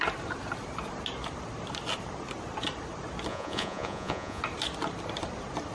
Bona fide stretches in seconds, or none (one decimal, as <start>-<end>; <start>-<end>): 0.0-3.3; 4.4-5.7